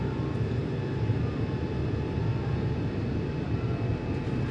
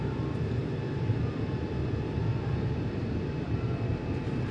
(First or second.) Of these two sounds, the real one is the first